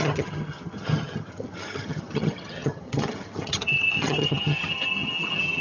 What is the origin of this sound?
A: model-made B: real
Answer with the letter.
A